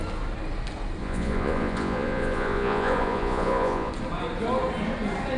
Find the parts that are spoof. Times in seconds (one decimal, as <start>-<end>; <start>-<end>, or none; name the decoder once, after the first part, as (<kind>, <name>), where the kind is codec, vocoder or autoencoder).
1.0-3.9 (vocoder, Vocos)